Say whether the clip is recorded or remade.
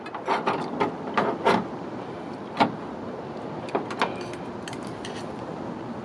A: recorded